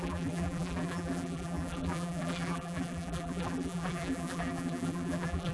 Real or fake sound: fake